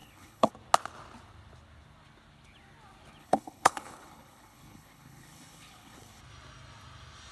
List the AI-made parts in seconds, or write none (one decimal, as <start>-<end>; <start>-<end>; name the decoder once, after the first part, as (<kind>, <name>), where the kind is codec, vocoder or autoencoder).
0.0-0.5 (codec, HILCodec); 3.2-6.2